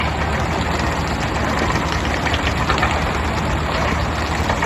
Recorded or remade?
recorded